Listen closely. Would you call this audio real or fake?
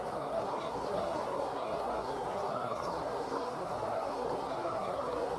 fake